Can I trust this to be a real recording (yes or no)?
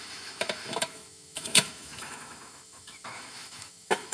no